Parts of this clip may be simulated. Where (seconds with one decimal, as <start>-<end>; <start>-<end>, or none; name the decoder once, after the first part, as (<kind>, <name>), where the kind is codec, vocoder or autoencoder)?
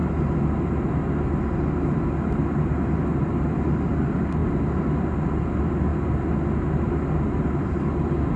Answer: none